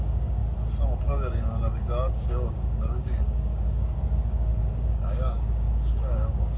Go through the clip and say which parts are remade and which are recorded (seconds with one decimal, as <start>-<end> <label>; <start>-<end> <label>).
0.0-0.4 remade; 0.4-1.0 recorded; 1.0-6.6 remade